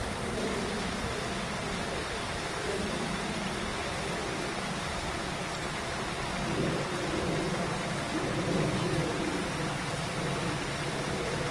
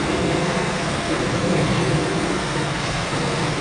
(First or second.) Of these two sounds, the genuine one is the first